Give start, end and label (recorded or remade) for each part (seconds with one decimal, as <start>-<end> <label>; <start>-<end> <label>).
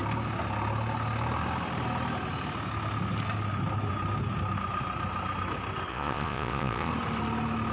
0.0-5.9 recorded; 5.9-6.9 remade; 6.9-7.7 recorded